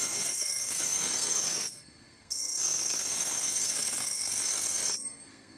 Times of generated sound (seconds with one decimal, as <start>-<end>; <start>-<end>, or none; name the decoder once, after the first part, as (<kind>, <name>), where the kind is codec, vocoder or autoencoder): 0.0-5.6 (codec, SNAC)